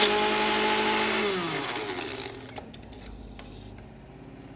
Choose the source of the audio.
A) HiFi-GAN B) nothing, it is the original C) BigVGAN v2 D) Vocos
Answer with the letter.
B